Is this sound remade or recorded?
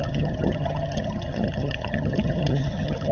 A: remade